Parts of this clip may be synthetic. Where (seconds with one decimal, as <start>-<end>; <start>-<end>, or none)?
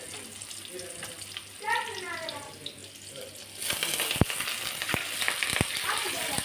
0.0-2.8; 5.1-6.4